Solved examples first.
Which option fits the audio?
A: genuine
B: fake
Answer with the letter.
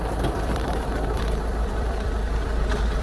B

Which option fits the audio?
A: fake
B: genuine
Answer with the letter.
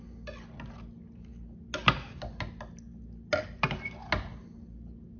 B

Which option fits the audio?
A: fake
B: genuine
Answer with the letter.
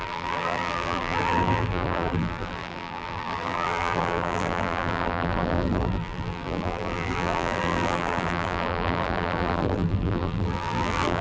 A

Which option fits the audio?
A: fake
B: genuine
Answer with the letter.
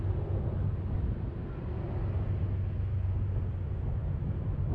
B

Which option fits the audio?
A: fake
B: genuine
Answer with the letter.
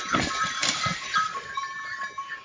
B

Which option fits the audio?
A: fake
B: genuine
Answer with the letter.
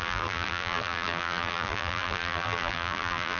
A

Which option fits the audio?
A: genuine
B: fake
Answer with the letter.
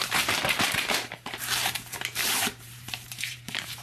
B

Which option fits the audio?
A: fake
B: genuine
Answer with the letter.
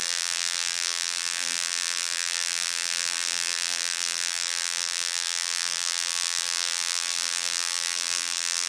A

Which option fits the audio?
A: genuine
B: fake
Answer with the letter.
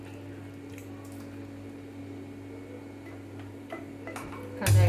A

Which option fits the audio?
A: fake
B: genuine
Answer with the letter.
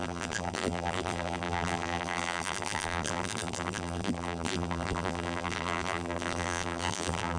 A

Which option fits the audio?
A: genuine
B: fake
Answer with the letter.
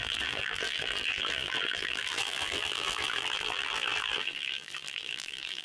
B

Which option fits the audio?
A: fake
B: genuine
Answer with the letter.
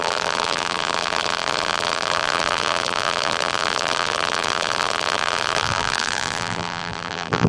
A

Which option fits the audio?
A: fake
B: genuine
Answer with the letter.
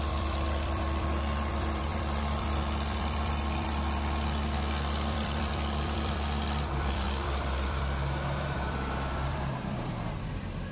A